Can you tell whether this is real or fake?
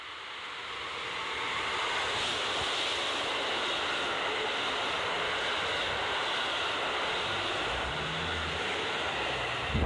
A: real